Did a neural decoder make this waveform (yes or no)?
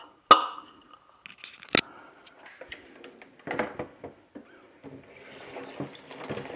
no